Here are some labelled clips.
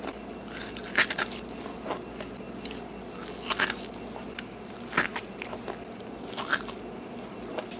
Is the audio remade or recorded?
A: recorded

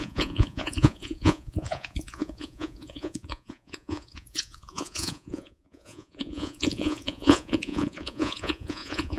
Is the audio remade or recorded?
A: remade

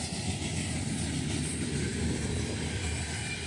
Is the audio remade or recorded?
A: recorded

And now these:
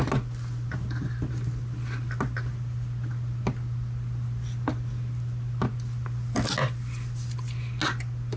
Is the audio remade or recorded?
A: recorded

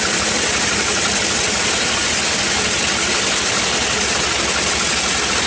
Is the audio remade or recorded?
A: recorded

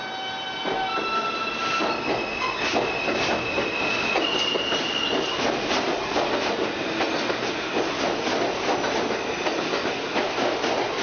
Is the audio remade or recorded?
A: recorded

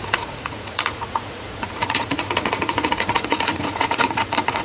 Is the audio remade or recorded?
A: remade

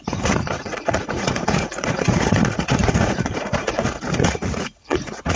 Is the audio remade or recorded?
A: remade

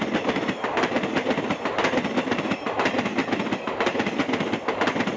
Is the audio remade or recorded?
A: recorded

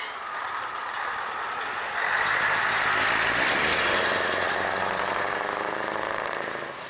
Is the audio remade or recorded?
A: recorded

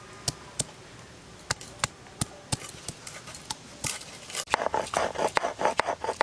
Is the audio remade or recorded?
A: recorded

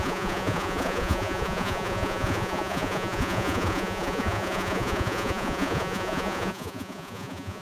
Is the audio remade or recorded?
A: remade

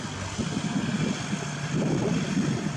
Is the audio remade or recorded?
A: recorded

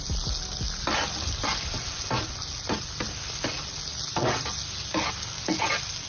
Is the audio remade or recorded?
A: recorded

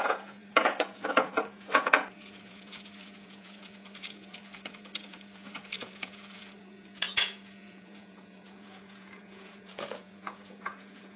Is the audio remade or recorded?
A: remade